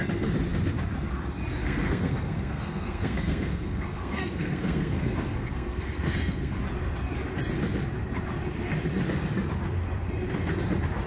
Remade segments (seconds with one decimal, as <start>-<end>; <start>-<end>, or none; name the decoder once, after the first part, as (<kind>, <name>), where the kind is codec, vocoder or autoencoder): 1.6-6.6 (codec, SNAC)